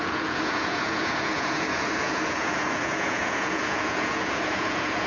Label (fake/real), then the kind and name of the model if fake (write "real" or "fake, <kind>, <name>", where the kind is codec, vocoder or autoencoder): fake, vocoder, Vocos